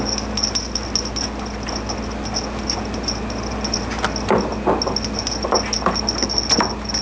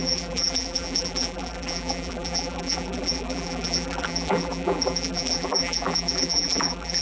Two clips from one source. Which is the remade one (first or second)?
second